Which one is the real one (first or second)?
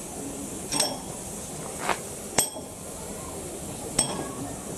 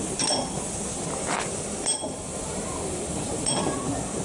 first